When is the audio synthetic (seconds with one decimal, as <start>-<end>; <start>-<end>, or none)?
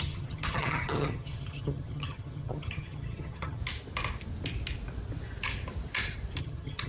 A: 0.0-3.6; 6.4-6.9